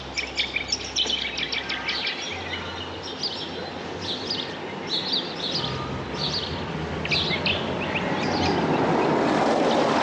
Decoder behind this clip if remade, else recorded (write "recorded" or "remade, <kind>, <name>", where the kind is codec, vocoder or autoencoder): recorded